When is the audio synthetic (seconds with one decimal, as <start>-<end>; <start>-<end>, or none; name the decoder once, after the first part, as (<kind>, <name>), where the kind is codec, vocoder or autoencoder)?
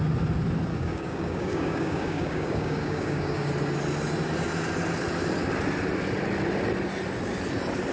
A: 0.7-3.5 (codec, DAC)